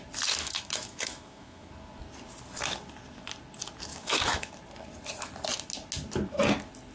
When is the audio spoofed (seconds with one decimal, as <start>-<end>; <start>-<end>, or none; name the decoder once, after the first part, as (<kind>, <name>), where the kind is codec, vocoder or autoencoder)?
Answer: 0.4-1.7 (autoencoder, DAC-VAE); 3.9-4.5